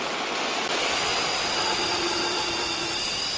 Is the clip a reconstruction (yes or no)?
no